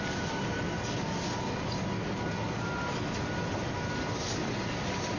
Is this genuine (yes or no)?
yes